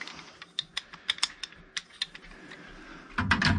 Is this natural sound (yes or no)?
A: yes